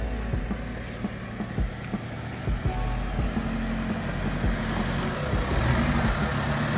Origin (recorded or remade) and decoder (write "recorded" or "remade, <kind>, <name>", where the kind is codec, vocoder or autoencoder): recorded